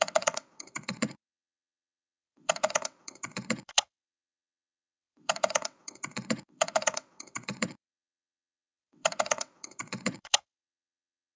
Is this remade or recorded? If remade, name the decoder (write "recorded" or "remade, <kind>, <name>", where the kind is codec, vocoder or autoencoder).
remade, vocoder, WaveNeXt